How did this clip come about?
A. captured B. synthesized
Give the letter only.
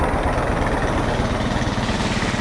A